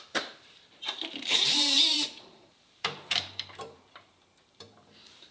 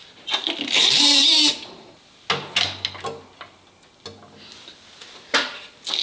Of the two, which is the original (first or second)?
second